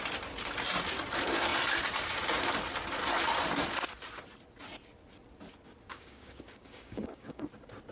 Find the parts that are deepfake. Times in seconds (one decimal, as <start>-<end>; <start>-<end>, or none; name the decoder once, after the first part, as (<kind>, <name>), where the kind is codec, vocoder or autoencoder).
5.9-7.4 (codec, DAC)